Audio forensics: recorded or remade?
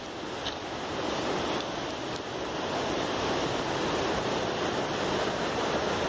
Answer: remade